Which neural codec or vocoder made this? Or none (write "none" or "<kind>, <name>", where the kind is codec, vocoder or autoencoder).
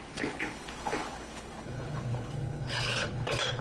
codec, HILCodec